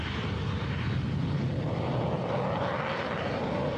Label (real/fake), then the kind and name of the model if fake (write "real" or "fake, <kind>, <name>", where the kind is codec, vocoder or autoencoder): real